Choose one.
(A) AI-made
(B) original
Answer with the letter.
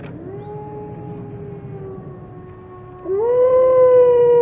B